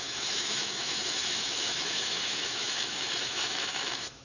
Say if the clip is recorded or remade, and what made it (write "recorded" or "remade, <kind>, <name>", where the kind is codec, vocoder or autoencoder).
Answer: remade, autoencoder, DAC-VAE